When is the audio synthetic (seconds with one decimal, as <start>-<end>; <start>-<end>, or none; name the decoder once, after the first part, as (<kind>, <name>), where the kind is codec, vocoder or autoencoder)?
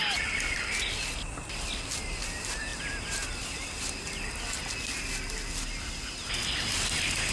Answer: none